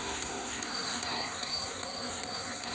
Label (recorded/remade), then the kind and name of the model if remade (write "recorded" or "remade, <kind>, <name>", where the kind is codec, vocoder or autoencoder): remade, codec, SNAC